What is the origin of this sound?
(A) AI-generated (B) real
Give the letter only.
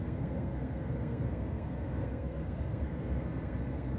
A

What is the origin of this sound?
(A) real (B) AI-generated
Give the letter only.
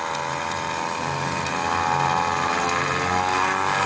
A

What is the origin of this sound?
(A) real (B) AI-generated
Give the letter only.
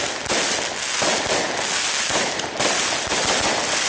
A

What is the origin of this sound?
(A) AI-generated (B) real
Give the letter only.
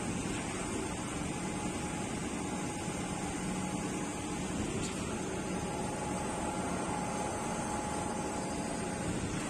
B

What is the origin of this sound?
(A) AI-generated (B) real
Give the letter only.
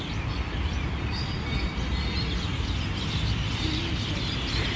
B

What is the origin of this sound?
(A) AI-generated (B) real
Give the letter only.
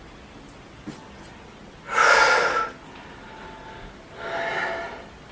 B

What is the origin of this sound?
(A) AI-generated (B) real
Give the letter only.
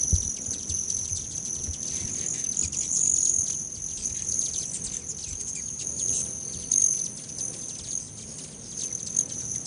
B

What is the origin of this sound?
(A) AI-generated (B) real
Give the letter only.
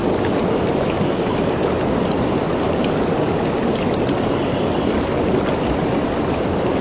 B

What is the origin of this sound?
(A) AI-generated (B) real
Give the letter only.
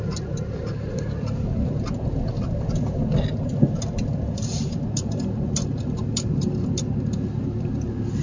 B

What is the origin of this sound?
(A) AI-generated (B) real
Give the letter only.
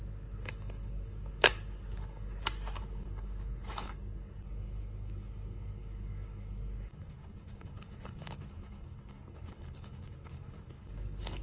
A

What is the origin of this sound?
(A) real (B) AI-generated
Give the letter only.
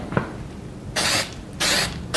A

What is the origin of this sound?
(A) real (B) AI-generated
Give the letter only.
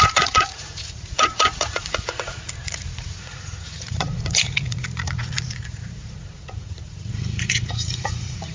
B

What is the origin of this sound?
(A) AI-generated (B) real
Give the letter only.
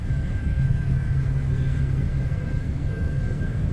A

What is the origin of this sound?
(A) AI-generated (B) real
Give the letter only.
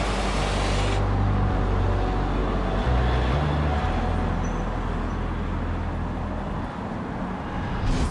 B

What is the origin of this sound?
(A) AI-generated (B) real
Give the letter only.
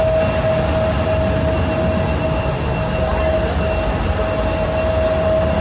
B